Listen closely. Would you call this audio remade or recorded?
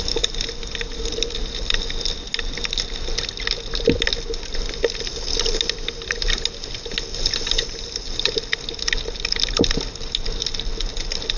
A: recorded